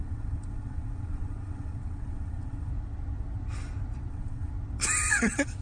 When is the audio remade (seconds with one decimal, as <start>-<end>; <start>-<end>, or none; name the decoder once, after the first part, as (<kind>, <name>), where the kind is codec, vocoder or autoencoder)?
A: 0.0-2.7 (vocoder, WaveNeXt); 4.1-4.5; 5.1-5.6